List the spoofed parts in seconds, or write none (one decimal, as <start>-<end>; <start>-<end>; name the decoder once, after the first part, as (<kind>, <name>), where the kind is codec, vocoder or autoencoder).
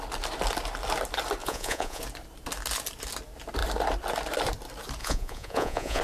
1.4-2.0 (vocoder, Vocos); 5.0-6.0